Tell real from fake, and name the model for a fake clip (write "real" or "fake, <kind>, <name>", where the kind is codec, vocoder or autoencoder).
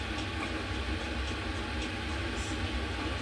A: real